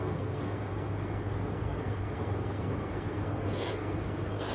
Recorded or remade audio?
remade